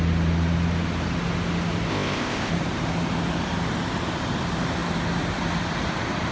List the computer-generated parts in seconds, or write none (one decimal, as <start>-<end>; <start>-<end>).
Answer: 1.9-2.5